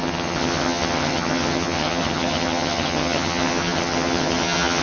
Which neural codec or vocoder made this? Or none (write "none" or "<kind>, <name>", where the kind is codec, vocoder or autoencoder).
vocoder, HiFi-GAN